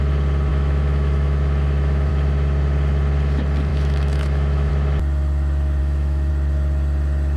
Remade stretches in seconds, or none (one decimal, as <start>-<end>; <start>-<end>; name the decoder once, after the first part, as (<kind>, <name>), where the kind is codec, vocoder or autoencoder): 0.5-2.1 (autoencoder, DAC-VAE); 3.7-4.7; 5.8-6.3